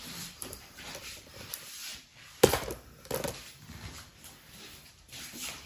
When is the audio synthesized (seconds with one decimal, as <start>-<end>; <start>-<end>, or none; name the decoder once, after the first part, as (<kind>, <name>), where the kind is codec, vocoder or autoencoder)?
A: 0.0-1.9 (vocoder, BigVGAN v2); 3.3-5.7